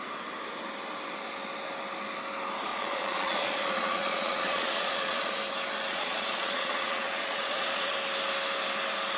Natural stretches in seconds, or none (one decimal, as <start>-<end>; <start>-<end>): 0.0-2.7; 5.3-5.9; 7.9-9.2